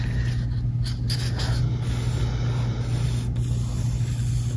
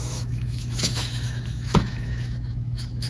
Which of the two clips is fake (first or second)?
second